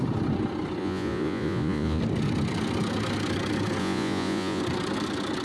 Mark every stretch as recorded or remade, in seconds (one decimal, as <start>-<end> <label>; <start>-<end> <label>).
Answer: 0.0-0.8 recorded; 0.8-2.0 remade; 2.0-3.8 recorded; 3.8-4.6 remade; 4.6-5.4 recorded

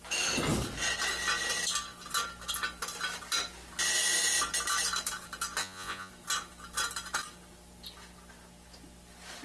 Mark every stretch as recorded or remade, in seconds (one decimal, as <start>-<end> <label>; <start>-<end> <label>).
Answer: 0.0-5.6 recorded; 5.6-6.1 remade; 6.1-9.4 recorded